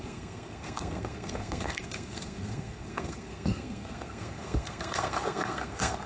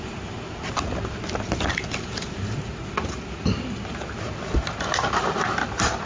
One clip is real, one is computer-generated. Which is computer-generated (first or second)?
first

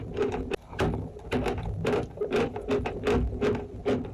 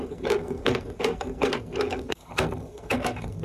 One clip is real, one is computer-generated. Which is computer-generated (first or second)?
second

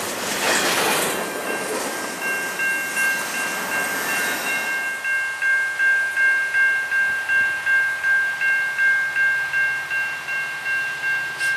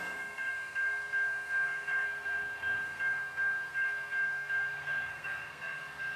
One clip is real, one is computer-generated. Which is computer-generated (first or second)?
second